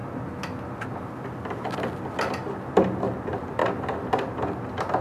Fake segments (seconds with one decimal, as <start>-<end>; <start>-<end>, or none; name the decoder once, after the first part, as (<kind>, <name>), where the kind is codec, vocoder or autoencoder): none

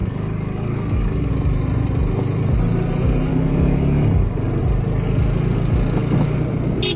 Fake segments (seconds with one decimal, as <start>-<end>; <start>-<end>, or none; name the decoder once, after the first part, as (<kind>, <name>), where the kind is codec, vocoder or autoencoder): 0.0-1.3 (codec, DAC); 3.3-4.6